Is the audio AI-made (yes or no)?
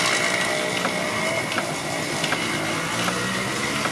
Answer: no